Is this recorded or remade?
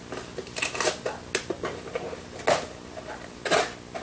recorded